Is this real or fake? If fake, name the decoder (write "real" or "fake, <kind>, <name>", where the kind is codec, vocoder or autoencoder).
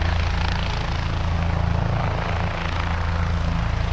real